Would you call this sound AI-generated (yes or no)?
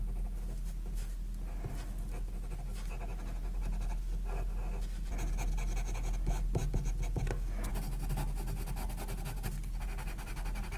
no